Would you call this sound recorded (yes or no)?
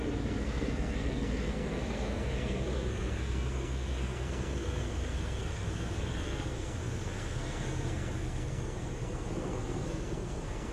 no